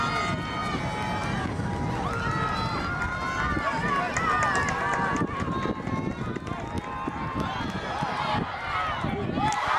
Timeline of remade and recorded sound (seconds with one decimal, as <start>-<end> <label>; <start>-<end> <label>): 0.0-9.8 recorded